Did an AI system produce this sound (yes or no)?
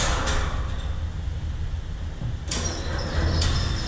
no